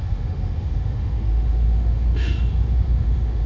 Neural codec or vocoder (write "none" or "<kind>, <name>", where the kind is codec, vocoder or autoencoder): autoencoder, DAC-VAE